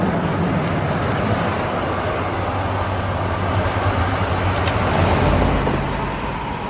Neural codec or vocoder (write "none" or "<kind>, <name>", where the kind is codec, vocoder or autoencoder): none